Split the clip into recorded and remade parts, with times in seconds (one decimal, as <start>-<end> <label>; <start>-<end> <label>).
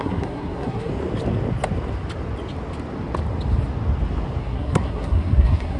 0.0-0.9 remade; 0.9-4.4 recorded; 4.4-5.8 remade